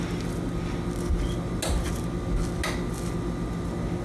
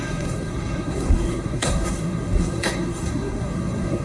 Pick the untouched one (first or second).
first